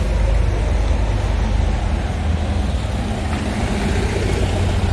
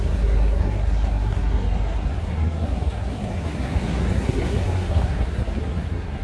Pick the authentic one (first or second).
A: first